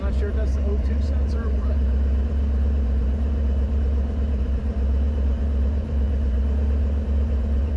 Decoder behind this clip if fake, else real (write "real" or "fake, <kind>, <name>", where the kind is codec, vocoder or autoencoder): fake, vocoder, BigVGAN v2